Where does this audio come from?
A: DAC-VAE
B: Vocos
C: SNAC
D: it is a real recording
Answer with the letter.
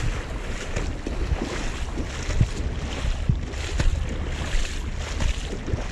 D